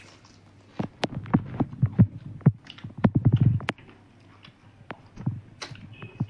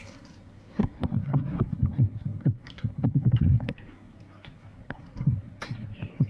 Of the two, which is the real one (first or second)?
first